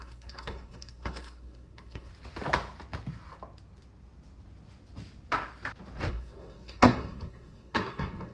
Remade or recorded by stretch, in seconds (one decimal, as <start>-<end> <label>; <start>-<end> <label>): 0.0-2.1 remade; 2.1-6.1 recorded; 6.1-8.3 remade